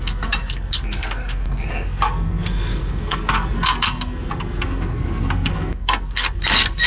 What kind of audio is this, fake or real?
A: fake